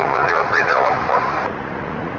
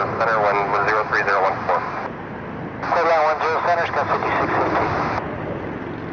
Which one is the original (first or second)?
second